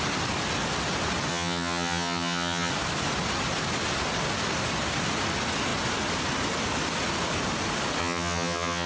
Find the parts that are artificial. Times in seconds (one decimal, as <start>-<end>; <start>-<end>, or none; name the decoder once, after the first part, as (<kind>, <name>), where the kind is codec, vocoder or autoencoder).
1.3-2.7 (vocoder, HiFi-GAN); 8.0-8.9